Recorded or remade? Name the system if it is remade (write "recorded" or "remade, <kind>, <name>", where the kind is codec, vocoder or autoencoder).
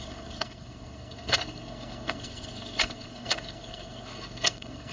remade, codec, SNAC